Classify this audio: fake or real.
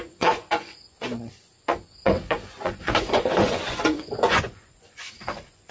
fake